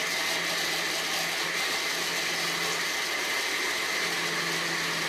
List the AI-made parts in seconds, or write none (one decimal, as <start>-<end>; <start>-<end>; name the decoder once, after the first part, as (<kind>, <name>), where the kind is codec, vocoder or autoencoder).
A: none